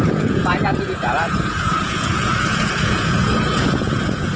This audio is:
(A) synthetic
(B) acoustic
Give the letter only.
A